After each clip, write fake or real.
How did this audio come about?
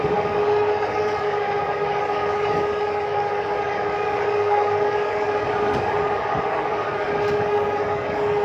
fake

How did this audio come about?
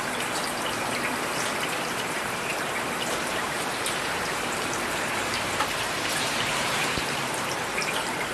fake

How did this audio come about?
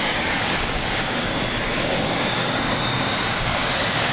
fake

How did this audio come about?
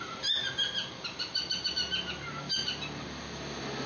real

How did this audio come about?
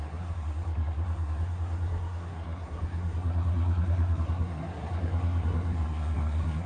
fake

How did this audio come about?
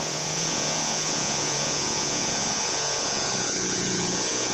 fake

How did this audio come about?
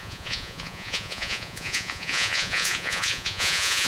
fake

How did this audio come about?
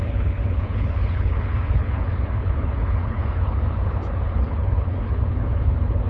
fake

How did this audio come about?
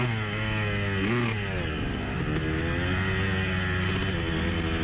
real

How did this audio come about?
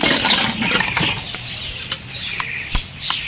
real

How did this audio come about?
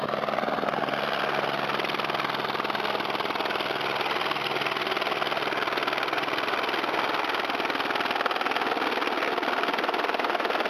real